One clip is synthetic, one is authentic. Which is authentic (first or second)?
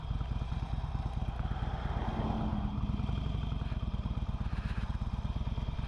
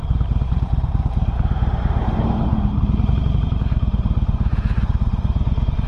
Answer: first